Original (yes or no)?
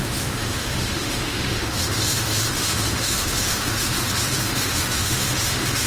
no